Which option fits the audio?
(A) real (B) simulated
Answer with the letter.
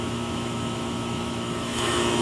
B